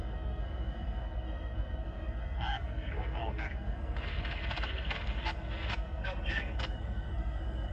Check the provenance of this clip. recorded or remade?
remade